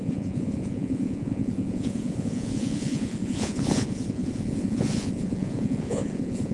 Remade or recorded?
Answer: remade